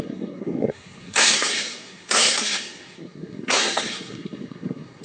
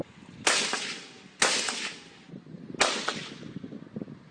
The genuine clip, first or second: second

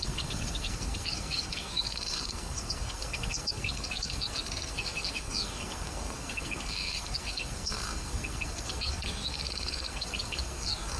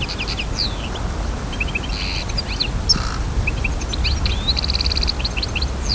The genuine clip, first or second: second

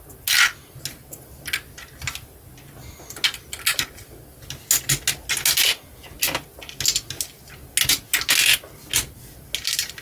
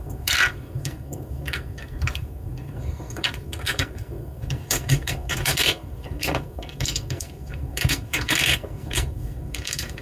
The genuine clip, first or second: first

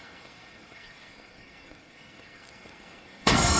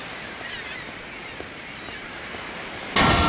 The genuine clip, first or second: second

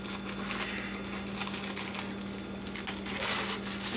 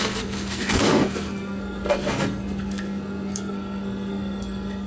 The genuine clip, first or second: first